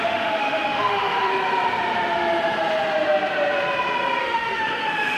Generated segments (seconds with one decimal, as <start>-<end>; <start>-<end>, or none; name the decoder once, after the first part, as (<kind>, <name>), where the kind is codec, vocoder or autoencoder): 0.0-1.3 (autoencoder, DAC-VAE); 4.2-5.2